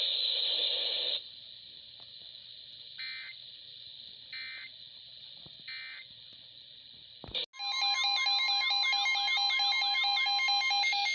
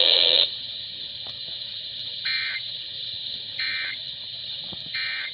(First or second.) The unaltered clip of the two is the first